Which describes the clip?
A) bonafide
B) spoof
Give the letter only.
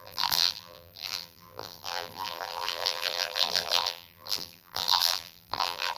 B